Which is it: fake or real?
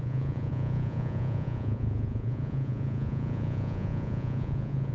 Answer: fake